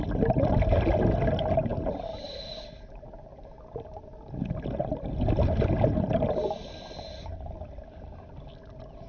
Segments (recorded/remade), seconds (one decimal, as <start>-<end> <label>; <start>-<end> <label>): 0.0-9.1 recorded